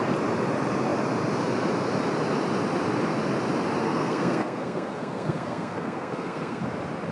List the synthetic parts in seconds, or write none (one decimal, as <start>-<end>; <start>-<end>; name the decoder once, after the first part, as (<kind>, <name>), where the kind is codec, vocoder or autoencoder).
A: 3.8-6.6 (codec, SNAC)